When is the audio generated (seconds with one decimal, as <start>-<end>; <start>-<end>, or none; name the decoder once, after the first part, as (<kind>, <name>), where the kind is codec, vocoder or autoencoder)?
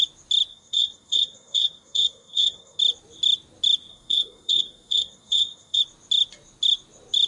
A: 0.5-2.8 (codec, SNAC); 3.9-5.8